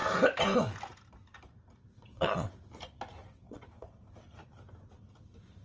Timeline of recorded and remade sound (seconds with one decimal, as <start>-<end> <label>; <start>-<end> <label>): 0.0-2.0 recorded; 2.0-2.6 remade; 2.6-3.2 recorded; 3.2-4.0 remade; 4.0-5.6 recorded